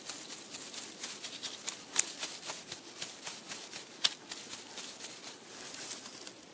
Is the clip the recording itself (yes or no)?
yes